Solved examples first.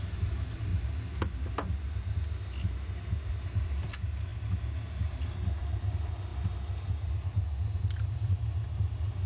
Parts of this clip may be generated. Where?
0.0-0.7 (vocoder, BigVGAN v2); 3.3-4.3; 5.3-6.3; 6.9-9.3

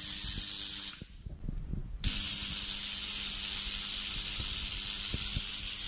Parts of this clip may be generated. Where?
none

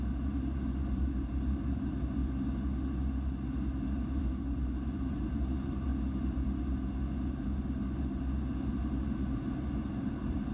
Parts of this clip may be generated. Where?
0.0-2.2 (vocoder, BigVGAN v2); 4.2-5.9; 9.9-10.5

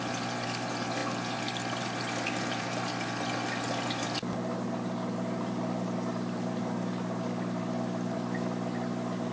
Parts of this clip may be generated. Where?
0.0-9.3 (vocoder, BigVGAN v2)

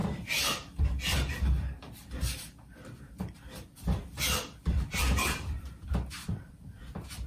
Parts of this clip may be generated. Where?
0.8-7.3 (vocoder, BigVGAN v2)

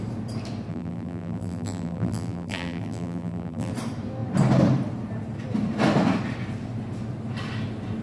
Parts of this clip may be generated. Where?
0.7-3.7 (vocoder, BigVGAN v2)

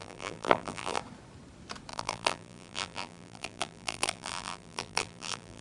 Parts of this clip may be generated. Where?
0.0-1.0 (vocoder, BigVGAN v2); 1.9-5.6

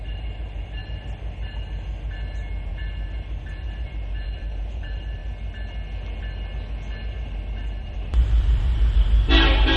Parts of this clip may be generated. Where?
0.0-0.8 (vocoder, BigVGAN v2); 2.7-5.2; 7.1-9.8